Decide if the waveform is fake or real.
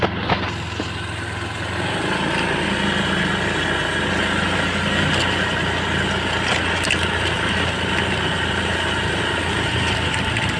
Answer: real